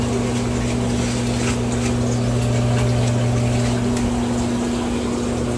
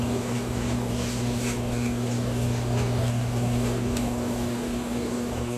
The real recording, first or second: first